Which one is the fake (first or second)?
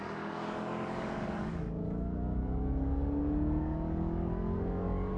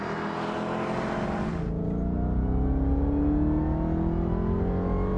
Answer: first